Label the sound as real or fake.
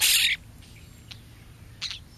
real